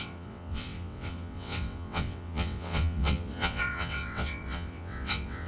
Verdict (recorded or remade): remade